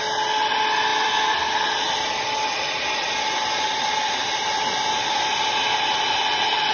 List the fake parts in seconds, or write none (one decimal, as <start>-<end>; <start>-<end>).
none